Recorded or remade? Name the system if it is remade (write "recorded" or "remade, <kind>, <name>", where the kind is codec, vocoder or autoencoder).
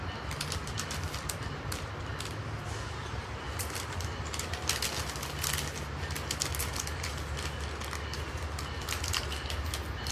recorded